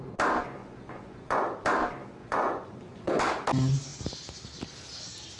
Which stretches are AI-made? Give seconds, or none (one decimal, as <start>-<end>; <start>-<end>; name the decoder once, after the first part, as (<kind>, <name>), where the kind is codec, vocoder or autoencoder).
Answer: 0.6-1.4 (vocoder, Vocos); 2.2-3.2